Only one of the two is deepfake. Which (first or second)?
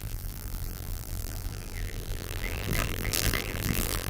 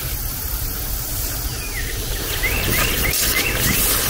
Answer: first